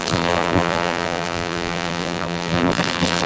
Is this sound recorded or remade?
remade